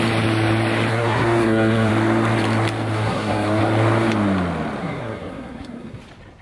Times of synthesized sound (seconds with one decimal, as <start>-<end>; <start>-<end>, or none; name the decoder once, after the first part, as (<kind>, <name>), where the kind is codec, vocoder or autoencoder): 0.9-1.9 (codec, SNAC); 2.9-3.6; 4.8-6.0